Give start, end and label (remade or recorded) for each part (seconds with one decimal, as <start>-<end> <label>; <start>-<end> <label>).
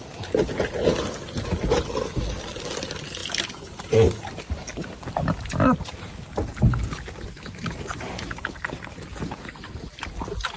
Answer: 0.0-10.6 recorded